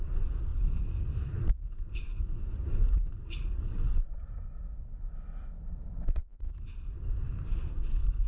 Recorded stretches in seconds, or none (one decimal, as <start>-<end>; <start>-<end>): 0.0-0.5; 4.3-6.2; 7.6-8.3